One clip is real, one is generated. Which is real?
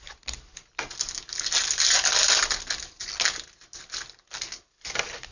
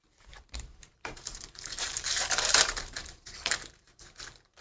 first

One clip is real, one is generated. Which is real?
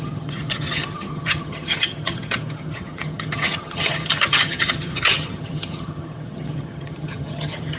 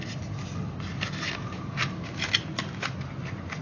second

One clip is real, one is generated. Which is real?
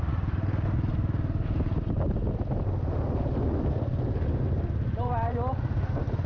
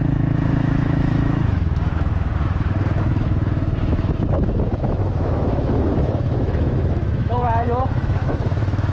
first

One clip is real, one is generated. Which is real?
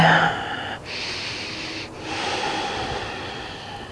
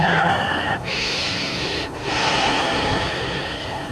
first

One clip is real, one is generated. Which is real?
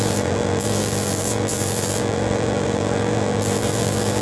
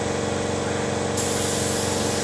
second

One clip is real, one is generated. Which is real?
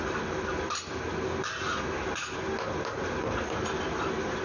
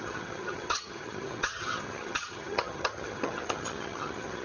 first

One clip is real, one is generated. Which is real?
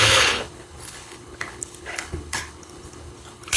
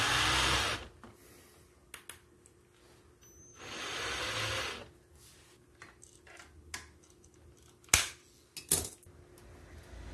second